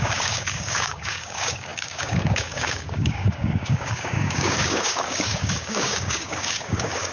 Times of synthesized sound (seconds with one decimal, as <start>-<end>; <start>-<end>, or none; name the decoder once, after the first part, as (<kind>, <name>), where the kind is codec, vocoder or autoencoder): 0.0-7.1 (codec, DAC)